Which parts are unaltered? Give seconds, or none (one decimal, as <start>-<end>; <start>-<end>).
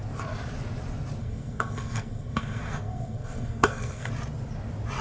0.0-1.2; 4.1-5.0